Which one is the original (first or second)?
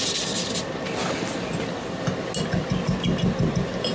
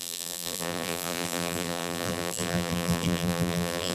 first